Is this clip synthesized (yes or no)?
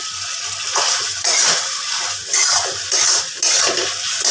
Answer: no